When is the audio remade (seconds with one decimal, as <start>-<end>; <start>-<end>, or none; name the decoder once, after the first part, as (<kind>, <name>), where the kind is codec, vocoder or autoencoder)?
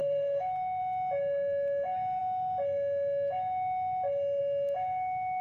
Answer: 0.0-0.8 (codec, SNAC)